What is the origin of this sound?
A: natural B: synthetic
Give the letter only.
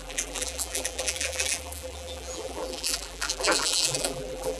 B